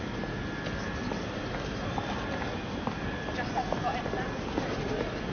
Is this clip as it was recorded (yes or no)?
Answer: yes